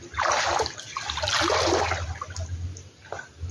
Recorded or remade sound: recorded